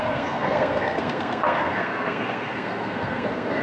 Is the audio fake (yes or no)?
yes